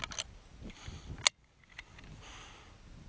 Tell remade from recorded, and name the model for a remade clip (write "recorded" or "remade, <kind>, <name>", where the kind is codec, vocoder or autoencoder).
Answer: recorded